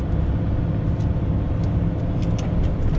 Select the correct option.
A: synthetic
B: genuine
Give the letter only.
B